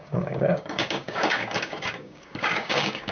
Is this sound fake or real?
fake